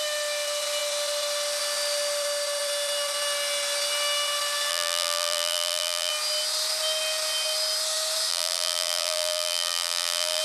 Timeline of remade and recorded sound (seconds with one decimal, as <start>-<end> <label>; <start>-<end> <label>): 0.0-4.7 recorded; 4.7-6.1 remade; 6.1-8.3 recorded; 8.3-10.4 remade